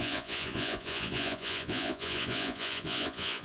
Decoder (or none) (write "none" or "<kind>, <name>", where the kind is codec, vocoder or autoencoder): vocoder, Vocos